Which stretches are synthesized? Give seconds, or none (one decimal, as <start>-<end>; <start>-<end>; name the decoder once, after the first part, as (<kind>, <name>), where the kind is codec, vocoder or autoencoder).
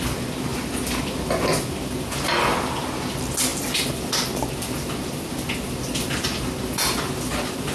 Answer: none